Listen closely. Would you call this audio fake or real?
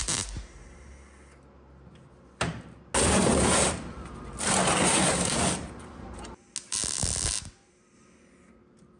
real